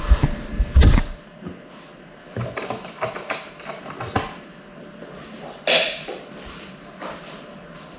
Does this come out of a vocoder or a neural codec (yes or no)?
no